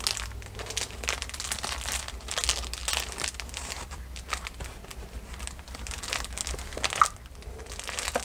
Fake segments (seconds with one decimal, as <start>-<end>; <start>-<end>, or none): none